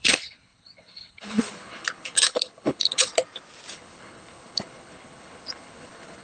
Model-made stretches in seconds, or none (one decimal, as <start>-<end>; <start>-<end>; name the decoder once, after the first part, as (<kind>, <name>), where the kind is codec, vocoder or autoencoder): 0.0-3.1 (codec, HILCodec); 3.7-6.2